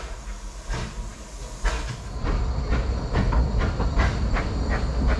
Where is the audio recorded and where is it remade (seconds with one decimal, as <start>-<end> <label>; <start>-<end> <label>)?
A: 0.0-5.2 recorded